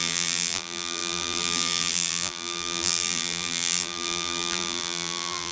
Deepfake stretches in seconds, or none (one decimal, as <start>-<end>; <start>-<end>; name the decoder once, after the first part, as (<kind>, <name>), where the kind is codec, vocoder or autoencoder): 0.0-5.5 (vocoder, BigVGAN v2)